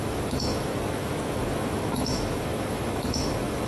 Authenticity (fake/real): fake